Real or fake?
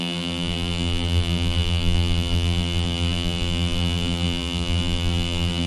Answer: fake